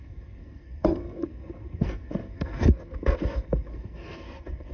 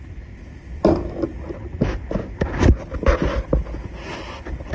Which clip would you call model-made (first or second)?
first